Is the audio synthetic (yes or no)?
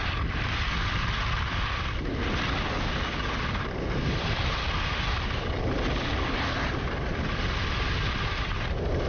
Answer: no